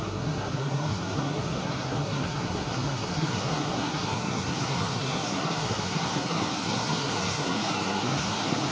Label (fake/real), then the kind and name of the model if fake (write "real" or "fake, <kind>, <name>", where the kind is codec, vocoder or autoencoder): fake, codec, SNAC